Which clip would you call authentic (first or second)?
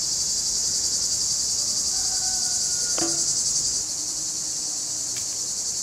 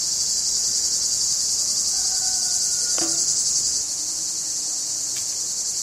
first